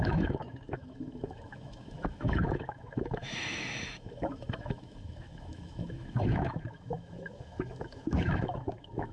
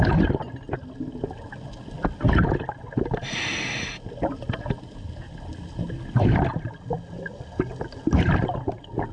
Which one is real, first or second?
second